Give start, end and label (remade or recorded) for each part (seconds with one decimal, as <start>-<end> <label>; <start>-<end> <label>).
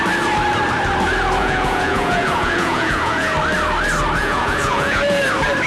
0.0-1.4 recorded; 1.4-3.3 remade; 3.3-4.2 recorded; 4.2-5.0 remade; 5.0-5.7 recorded